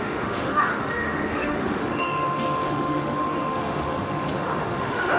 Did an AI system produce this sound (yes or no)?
yes